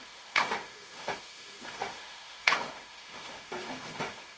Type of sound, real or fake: fake